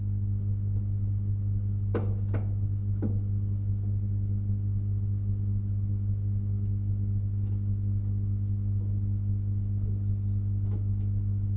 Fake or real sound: real